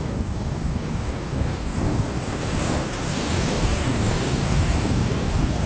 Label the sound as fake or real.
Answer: fake